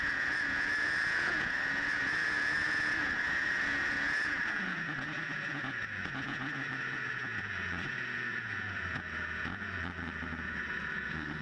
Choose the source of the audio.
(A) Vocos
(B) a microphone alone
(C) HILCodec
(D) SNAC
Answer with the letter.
A